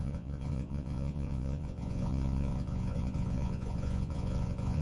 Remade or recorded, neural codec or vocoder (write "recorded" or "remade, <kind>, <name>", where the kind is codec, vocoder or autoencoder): remade, vocoder, Vocos